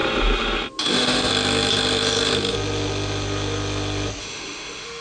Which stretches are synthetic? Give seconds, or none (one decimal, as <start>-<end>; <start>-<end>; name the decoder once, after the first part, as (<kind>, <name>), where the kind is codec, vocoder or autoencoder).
0.8-1.3 (autoencoder, DAC-VAE); 4.2-5.0